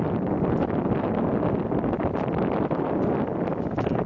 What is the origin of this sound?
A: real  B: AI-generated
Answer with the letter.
A